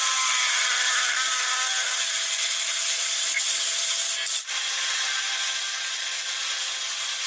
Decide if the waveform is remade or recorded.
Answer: recorded